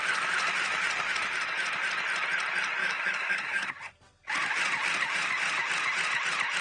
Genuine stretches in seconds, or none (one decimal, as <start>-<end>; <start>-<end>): 0.0-2.8; 3.7-6.6